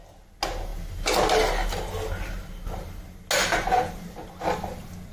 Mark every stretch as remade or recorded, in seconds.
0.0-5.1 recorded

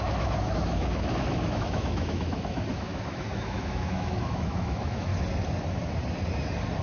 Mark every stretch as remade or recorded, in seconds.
0.0-5.1 remade; 5.1-6.8 recorded

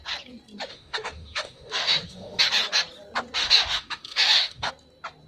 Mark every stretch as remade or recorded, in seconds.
0.0-0.7 recorded; 0.7-2.4 remade; 2.4-3.4 recorded; 3.4-4.7 remade; 4.7-5.3 recorded

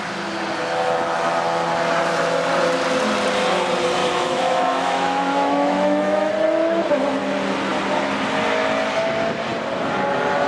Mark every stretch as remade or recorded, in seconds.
0.0-4.0 recorded; 4.0-6.3 remade; 6.3-10.5 recorded